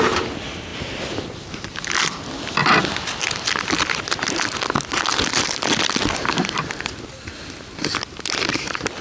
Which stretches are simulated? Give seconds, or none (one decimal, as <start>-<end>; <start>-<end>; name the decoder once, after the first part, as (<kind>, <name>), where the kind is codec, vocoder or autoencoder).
none